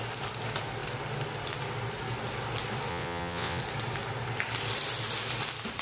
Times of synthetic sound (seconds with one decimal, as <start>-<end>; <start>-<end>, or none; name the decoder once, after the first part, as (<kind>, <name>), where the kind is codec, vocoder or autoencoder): 2.9-3.6 (vocoder, WaveNeXt)